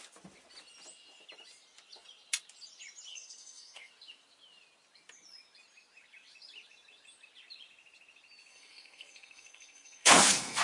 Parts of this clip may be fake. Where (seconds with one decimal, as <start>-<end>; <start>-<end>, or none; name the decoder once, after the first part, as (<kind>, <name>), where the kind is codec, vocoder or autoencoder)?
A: 3.1-3.9 (codec, SNAC); 8.5-10.6